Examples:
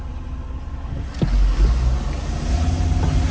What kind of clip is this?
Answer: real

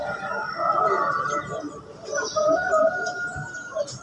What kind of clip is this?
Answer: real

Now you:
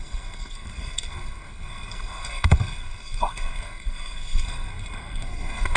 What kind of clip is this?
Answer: fake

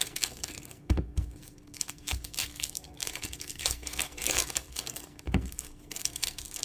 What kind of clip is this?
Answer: fake